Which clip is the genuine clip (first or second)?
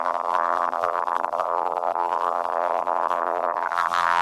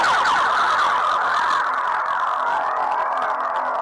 second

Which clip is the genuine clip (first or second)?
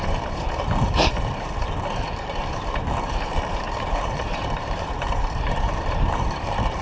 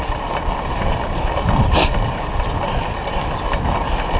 second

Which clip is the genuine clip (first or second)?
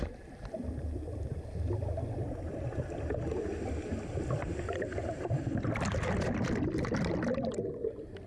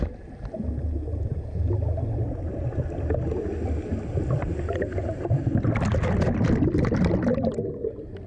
second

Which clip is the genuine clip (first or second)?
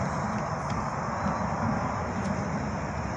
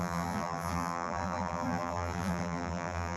first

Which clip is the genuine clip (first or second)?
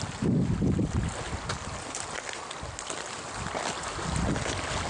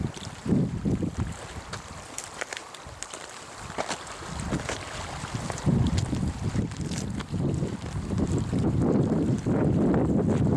first